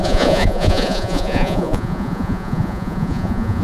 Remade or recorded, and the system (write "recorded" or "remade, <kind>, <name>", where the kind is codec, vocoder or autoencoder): remade, vocoder, Vocos